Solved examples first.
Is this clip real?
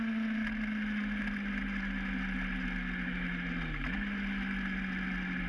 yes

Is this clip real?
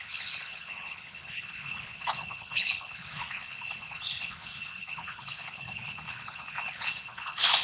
no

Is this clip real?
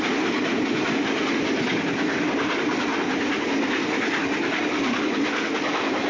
yes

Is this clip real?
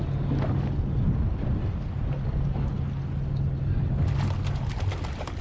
yes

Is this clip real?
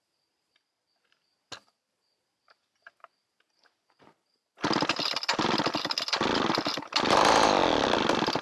yes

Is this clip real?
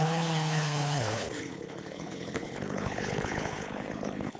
no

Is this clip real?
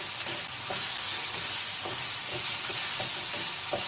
yes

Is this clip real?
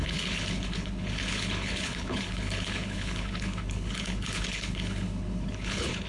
no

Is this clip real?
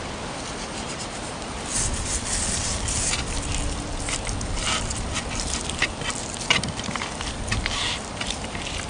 yes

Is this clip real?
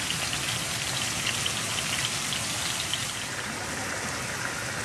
yes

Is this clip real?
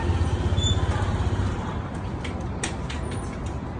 yes